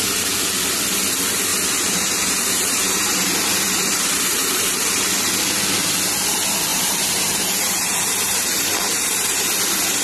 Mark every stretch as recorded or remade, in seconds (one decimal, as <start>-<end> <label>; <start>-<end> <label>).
0.0-1.5 recorded; 1.5-4.8 remade; 4.8-6.7 recorded; 6.7-9.4 remade; 9.4-10.0 recorded